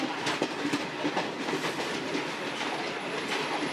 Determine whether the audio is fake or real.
real